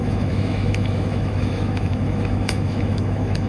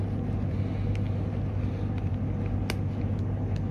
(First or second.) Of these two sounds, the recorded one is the second